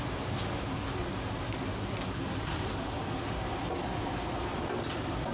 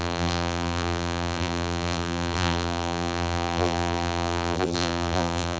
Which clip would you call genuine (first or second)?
first